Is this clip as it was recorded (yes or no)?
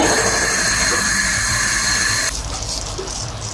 no